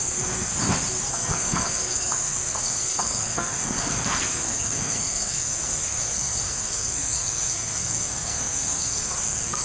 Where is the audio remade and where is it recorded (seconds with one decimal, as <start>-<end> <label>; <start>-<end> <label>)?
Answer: 0.0-0.5 remade; 0.5-1.1 recorded; 1.1-9.6 remade